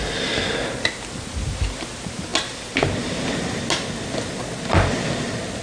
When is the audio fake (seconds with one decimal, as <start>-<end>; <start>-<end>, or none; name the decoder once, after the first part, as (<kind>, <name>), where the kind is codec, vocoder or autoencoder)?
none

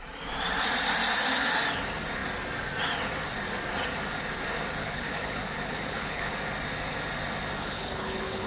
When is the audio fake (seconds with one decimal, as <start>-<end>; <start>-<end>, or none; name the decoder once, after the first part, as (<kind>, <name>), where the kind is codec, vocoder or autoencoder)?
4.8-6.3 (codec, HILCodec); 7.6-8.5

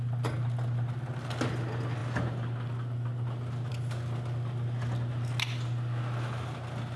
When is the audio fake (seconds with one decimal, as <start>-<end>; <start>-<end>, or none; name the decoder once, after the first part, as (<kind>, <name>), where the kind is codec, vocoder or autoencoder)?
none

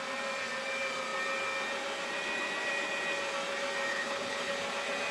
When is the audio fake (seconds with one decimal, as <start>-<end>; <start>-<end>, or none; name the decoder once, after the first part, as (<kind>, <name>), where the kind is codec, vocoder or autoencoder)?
3.9-4.5 (codec, HILCodec)

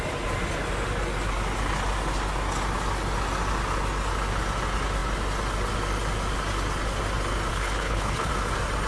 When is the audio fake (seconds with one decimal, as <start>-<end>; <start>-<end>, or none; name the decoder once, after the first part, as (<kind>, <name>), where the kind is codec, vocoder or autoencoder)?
7.5-8.3 (codec, HILCodec)

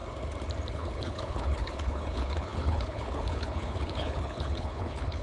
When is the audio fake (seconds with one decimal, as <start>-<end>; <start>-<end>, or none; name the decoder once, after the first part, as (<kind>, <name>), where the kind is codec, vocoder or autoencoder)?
0.7-5.2 (codec, HILCodec)

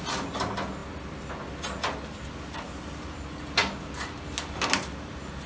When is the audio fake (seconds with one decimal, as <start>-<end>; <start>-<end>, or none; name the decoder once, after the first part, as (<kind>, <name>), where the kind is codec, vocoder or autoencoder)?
none

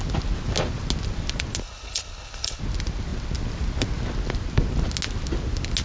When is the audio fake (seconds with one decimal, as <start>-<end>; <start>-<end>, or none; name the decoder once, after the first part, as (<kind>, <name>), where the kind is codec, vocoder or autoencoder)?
1.6-2.6 (codec, HILCodec)